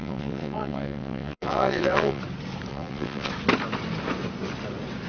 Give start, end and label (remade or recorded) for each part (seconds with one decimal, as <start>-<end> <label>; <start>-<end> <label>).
0.0-2.2 remade; 2.2-2.7 recorded; 2.7-3.3 remade; 3.3-5.1 recorded